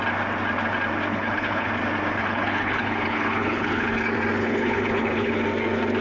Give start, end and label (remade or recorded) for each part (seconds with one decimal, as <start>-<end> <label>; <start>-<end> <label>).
0.0-1.1 recorded; 1.1-1.7 remade; 1.7-2.2 recorded; 2.2-3.9 remade; 3.9-4.4 recorded; 4.4-5.3 remade; 5.3-6.0 recorded